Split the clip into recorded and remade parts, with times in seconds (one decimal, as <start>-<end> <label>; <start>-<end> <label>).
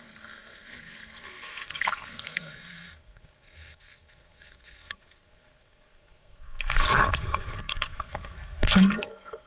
0.0-9.5 remade